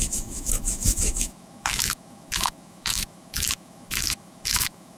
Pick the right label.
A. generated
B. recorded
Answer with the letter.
A